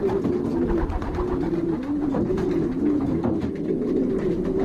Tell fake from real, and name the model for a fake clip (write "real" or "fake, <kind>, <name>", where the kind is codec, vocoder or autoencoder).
real